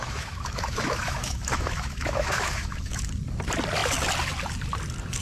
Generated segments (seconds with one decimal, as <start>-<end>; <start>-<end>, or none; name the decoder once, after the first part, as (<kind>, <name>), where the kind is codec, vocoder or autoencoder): 0.0-3.1 (autoencoder, DAC-VAE)